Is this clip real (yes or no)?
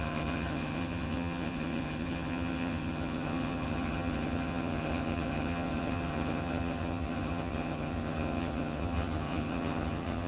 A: no